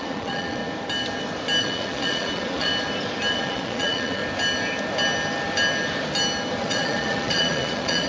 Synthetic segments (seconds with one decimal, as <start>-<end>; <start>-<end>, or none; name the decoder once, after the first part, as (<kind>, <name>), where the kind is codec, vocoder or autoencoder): 0.0-0.6 (vocoder, Vocos); 1.6-2.7; 3.3-4.2; 6.6-8.1